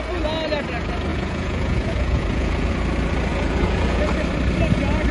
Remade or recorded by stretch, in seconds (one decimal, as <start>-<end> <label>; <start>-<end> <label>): 0.0-1.1 recorded; 1.1-2.7 remade; 2.7-3.3 recorded; 3.3-4.0 remade; 4.0-5.1 recorded